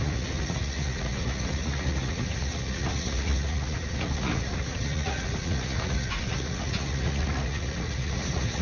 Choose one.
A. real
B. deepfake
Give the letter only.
B